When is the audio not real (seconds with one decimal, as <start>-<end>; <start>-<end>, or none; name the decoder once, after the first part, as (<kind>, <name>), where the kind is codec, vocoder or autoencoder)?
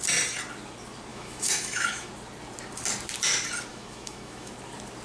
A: 1.1-2.1 (autoencoder, DAC-VAE); 3.7-4.5